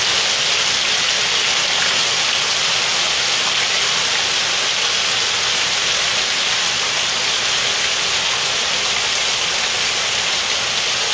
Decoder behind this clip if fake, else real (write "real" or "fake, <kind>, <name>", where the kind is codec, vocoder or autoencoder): real